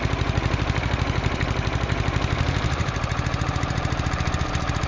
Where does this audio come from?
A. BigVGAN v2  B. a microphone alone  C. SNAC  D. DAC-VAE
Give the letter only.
A